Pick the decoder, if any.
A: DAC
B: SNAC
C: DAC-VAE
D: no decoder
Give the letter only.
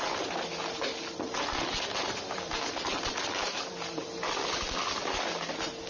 D